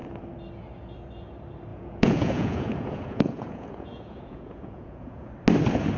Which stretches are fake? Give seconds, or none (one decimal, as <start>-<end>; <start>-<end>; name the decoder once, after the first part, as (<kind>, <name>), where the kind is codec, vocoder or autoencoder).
1.7-5.3 (vocoder, Vocos)